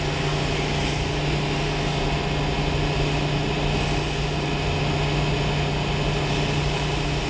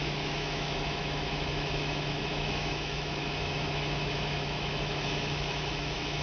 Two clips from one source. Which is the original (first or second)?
first